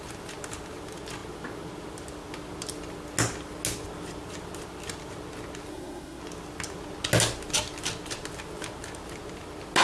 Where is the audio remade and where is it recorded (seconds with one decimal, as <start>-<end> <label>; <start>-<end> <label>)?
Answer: 0.0-5.7 recorded; 5.7-6.2 remade; 6.2-9.8 recorded